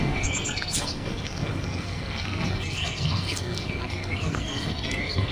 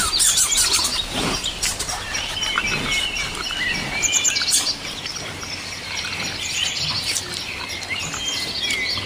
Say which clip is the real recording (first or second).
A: second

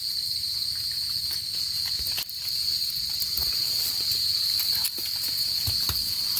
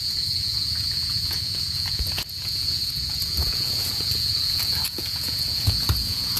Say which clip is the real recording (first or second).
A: first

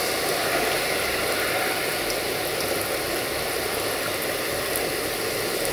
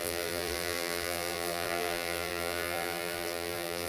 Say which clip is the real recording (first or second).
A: first